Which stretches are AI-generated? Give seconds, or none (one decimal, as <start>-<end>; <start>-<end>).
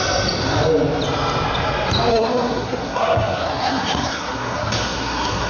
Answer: 2.1-5.5